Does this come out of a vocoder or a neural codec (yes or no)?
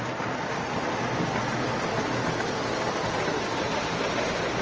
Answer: no